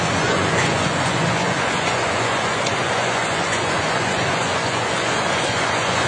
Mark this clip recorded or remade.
remade